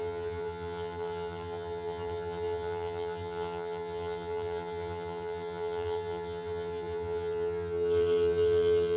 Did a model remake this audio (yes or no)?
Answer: yes